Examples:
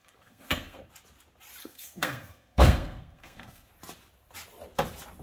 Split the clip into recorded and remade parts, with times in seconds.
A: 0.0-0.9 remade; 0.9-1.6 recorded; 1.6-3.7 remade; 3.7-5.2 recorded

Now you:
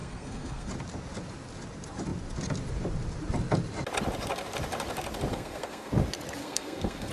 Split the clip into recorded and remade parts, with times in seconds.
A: 0.0-0.7 remade; 0.7-5.3 recorded; 5.3-5.9 remade; 5.9-6.4 recorded; 6.4-7.1 remade

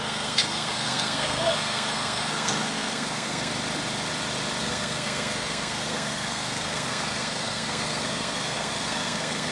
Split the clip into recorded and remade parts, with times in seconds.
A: 0.0-3.5 remade; 3.5-4.6 recorded; 4.6-9.5 remade